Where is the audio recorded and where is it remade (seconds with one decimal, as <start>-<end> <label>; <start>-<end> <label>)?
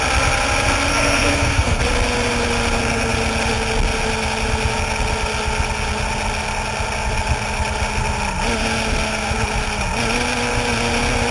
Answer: 0.0-0.9 recorded; 0.9-1.8 remade; 1.8-11.3 recorded